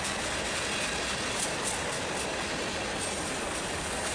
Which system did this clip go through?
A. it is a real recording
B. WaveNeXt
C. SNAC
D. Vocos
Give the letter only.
A